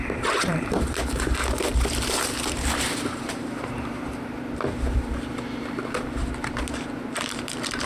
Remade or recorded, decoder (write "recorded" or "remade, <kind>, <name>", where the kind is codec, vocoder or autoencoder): remade, vocoder, BigVGAN v2